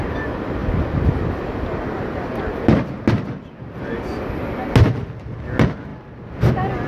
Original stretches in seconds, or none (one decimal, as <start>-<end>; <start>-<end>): 0.0-6.9